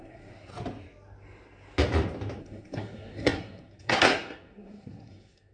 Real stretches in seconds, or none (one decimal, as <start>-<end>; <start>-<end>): 0.5-2.4